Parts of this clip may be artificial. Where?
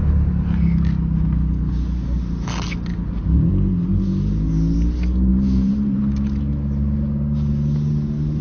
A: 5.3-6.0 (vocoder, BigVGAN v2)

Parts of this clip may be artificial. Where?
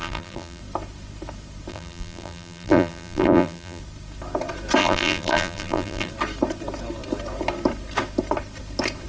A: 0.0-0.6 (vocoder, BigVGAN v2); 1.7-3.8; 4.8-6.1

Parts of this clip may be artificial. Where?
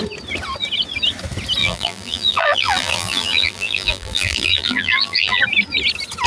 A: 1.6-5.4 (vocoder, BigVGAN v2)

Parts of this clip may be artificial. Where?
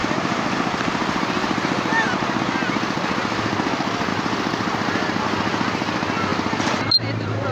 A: 0.0-2.4 (vocoder, BigVGAN v2); 4.1-5.2; 6.3-7.5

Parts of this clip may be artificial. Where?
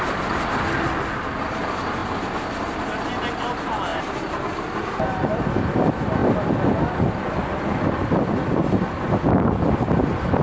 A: 3.9-4.5 (vocoder, BigVGAN v2)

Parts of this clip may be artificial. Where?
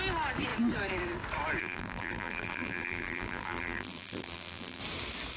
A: 1.6-4.8 (vocoder, BigVGAN v2)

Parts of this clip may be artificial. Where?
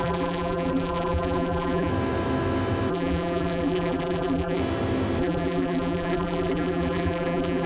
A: 0.0-1.9 (vocoder, BigVGAN v2); 2.9-4.6; 5.2-7.7